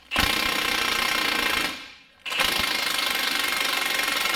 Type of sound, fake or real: real